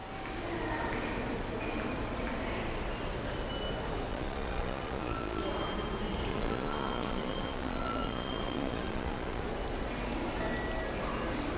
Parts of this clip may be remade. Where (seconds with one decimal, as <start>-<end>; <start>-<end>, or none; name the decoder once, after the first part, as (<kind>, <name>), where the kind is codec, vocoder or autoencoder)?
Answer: 4.1-5.4 (vocoder, Vocos); 6.3-9.4